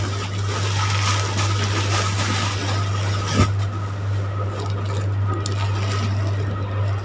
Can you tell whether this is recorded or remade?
recorded